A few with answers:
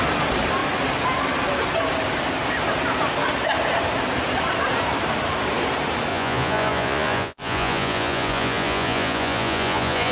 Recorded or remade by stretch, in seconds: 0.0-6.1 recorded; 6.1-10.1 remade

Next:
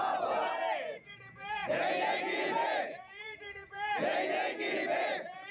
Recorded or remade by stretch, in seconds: 0.0-5.5 remade

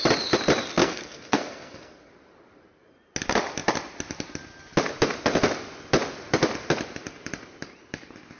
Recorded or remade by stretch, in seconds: 0.0-0.8 recorded; 0.8-2.1 remade; 2.1-8.4 recorded

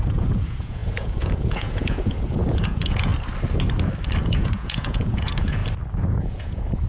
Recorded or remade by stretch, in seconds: 0.0-3.1 remade; 3.1-4.3 recorded; 4.3-5.6 remade; 5.6-6.2 recorded; 6.2-6.9 remade

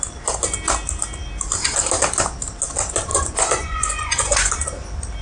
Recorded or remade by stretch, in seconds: 0.0-3.1 recorded; 3.1-4.5 remade; 4.5-5.2 recorded

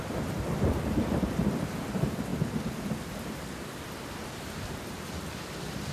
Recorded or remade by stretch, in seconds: 0.0-2.3 remade; 2.3-3.5 recorded; 3.5-5.9 remade

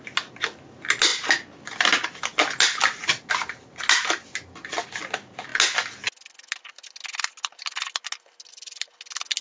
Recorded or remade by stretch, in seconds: 0.0-9.4 recorded

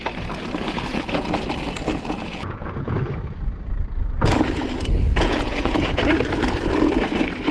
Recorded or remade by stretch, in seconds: 0.0-0.9 recorded; 0.9-1.5 remade; 1.5-1.9 recorded; 1.9-3.0 remade; 3.0-5.1 recorded; 5.1-6.0 remade; 6.0-7.5 recorded